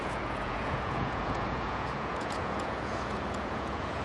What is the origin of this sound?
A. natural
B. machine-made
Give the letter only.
B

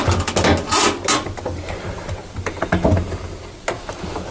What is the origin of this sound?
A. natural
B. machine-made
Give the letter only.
A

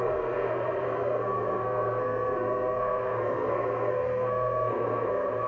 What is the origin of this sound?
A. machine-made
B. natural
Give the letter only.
A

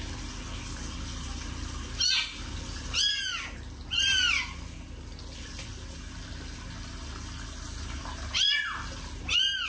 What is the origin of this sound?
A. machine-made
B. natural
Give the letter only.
B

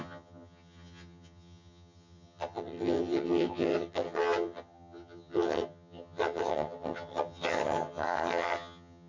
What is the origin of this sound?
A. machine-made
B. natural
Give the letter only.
A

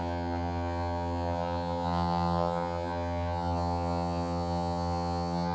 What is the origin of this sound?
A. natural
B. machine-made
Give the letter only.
B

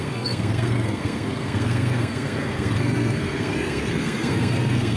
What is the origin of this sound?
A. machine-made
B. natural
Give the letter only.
A